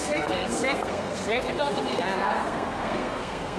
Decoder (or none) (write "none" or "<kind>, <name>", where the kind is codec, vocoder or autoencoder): codec, SNAC